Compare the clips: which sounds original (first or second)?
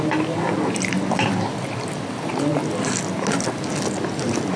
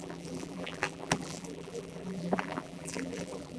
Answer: first